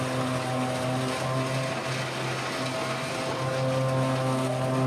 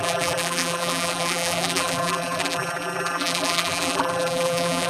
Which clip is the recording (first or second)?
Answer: first